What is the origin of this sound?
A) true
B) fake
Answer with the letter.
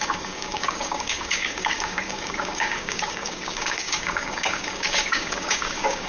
B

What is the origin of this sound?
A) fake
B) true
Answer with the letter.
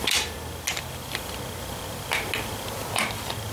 B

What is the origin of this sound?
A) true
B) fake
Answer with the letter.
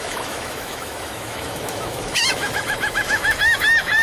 B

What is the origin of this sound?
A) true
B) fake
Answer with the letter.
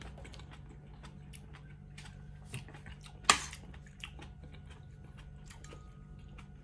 A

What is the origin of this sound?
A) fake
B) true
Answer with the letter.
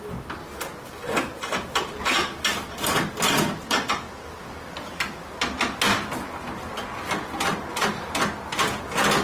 B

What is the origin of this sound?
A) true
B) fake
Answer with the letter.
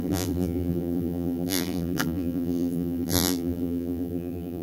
B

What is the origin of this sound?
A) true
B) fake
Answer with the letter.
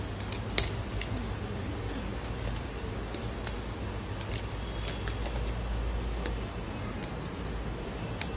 A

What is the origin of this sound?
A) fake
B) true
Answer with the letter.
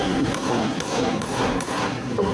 A